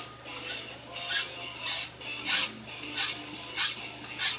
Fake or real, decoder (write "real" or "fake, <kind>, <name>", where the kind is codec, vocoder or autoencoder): real